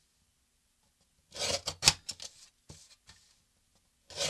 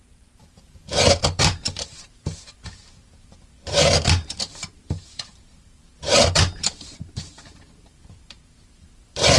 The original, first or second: first